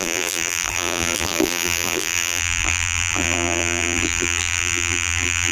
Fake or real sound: fake